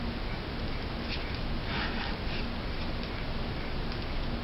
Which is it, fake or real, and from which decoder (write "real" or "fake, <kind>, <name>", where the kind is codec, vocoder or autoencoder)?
real